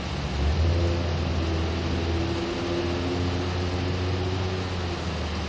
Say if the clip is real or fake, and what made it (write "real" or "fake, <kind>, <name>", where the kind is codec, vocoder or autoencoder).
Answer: real